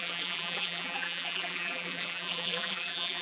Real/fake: fake